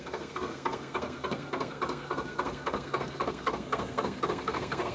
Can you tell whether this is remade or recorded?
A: remade